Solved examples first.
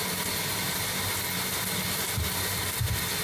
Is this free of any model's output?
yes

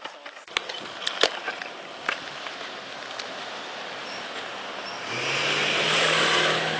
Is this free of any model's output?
yes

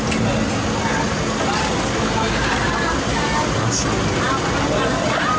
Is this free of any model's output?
yes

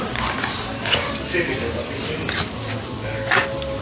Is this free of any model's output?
yes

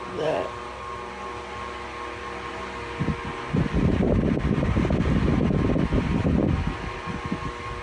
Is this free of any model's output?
yes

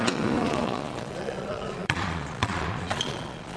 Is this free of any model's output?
no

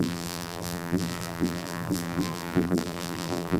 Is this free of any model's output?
no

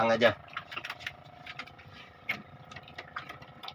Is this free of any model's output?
yes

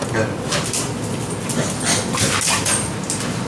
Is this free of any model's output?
yes